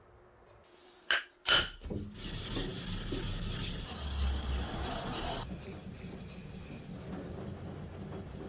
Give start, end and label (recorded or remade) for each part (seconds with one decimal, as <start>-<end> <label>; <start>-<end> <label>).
0.0-8.5 recorded